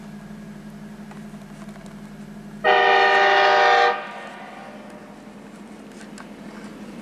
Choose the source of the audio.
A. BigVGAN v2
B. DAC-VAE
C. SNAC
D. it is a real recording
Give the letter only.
D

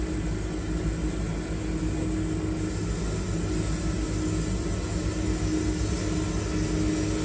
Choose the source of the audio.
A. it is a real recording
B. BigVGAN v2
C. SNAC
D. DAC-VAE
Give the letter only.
A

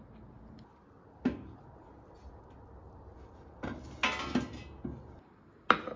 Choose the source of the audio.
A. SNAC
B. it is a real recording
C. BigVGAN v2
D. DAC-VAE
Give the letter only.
B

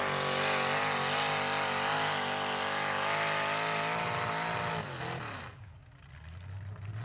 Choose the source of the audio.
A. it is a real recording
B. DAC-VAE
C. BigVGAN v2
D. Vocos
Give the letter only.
A